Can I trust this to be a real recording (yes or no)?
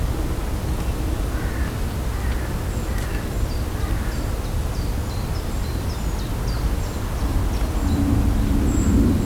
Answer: yes